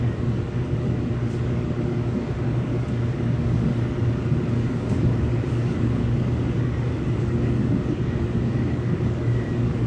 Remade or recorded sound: remade